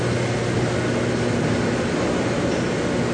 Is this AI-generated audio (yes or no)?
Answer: no